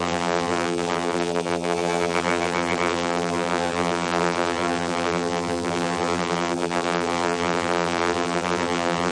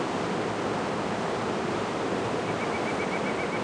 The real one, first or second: second